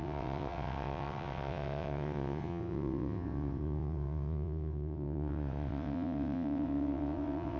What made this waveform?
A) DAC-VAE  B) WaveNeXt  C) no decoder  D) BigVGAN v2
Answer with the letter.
B